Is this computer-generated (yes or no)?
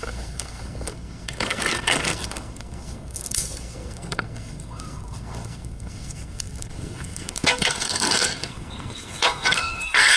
yes